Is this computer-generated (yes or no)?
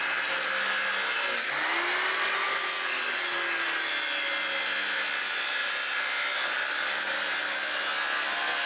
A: no